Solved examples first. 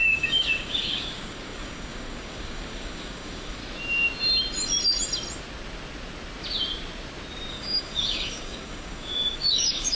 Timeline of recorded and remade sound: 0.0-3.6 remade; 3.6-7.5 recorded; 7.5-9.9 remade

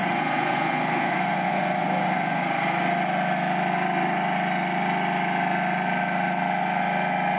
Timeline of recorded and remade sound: 0.0-2.4 remade; 2.4-7.4 recorded